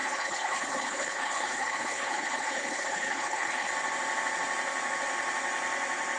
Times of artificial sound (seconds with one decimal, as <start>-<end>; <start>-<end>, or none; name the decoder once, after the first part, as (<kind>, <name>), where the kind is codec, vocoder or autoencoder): 0.0-3.7 (codec, HILCodec)